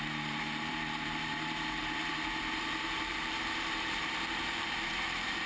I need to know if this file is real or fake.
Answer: fake